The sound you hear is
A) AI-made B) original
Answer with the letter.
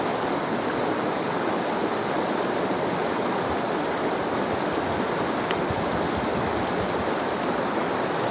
A